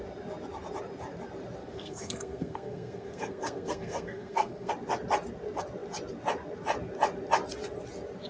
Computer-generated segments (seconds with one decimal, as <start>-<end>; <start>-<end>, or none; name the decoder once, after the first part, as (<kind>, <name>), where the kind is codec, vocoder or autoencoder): 1.6-4.7 (codec, SNAC)